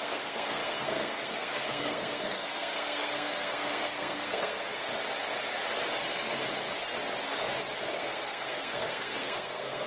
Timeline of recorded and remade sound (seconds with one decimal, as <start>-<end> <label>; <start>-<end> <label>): 0.0-4.9 remade; 4.9-7.9 recorded; 7.9-9.9 remade